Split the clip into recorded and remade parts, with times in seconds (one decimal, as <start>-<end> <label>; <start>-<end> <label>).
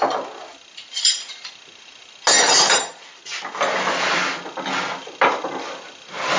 0.0-6.4 recorded